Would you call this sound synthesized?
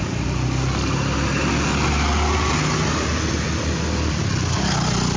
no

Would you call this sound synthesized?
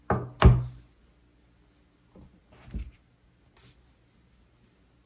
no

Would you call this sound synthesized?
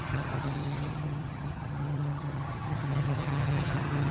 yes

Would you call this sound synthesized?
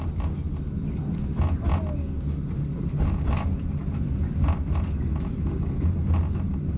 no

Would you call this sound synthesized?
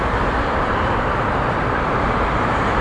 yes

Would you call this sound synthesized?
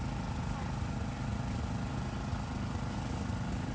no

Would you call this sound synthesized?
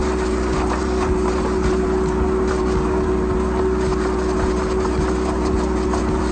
no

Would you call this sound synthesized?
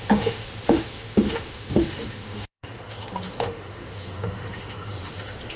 yes